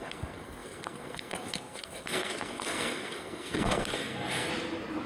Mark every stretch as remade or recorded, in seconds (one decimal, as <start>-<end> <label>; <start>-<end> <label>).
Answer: 0.0-4.5 remade; 4.5-5.1 recorded